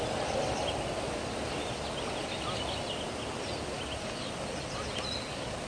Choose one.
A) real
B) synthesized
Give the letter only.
A